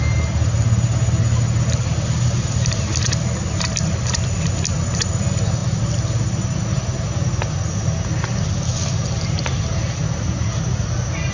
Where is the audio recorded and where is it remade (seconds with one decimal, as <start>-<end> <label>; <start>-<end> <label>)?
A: 0.0-11.3 recorded